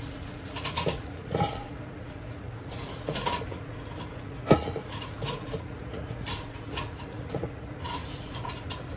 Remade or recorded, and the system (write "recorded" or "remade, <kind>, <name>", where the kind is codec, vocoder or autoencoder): remade, vocoder, Vocos